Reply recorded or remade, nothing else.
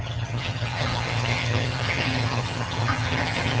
remade